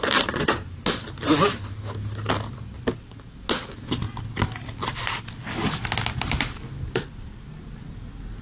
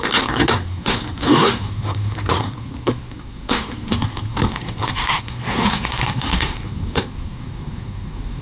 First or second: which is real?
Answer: first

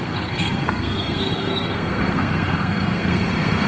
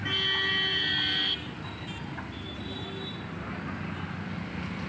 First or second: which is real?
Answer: second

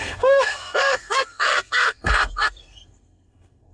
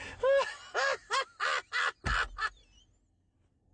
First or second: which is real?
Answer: second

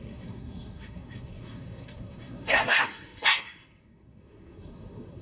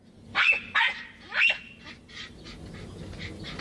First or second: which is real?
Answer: second